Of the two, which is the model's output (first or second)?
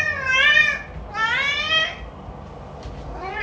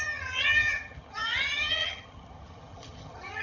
second